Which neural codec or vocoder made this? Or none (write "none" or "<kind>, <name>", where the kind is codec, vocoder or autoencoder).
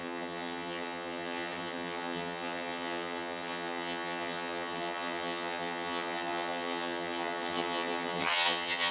vocoder, HiFi-GAN